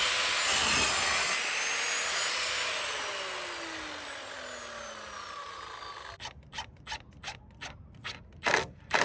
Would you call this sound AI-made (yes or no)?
no